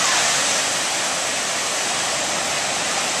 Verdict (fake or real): real